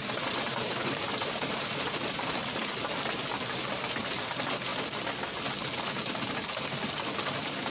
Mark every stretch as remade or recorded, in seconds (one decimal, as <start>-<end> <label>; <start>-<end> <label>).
0.0-1.6 remade; 1.6-7.7 recorded